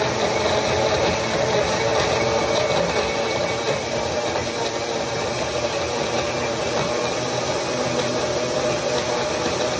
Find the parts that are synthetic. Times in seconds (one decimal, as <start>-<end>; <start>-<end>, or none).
none